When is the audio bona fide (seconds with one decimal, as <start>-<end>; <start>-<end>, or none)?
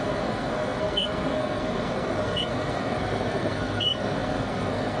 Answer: none